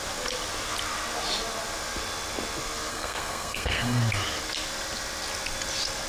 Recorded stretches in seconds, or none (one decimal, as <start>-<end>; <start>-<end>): 0.0-2.9; 4.0-6.1